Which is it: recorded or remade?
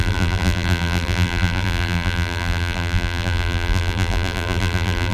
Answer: remade